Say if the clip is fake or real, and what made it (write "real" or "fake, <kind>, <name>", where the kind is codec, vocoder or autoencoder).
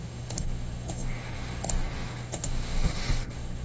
fake, autoencoder, DAC-VAE